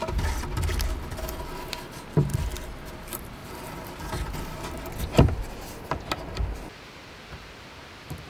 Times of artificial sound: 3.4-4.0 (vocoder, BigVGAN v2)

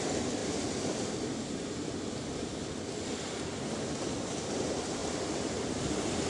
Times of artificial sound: 5.0-5.6 (vocoder, BigVGAN v2)